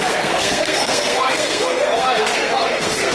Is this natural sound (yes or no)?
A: no